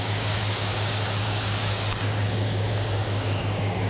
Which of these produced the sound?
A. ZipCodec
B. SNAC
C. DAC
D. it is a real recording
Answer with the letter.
C